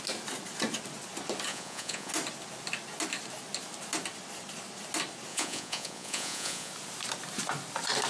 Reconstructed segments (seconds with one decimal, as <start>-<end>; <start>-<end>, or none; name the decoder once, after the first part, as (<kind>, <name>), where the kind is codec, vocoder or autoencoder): 1.5-2.1 (vocoder, Vocos); 5.3-6.7